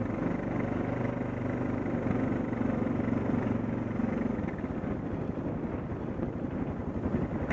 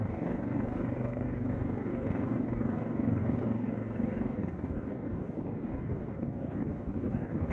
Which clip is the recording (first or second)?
first